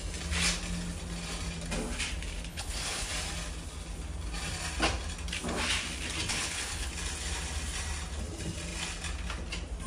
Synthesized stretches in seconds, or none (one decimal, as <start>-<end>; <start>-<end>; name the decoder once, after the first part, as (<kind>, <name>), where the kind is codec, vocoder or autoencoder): 2.5-3.1 (codec, HILCodec); 6.3-6.9